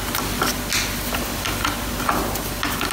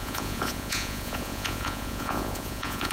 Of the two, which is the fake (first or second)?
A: second